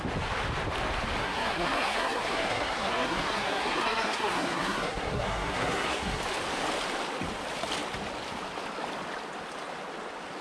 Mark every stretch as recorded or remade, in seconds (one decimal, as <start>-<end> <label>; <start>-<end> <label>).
0.0-1.2 recorded; 1.2-6.2 remade; 6.2-10.4 recorded